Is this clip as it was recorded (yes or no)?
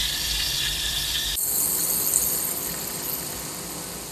yes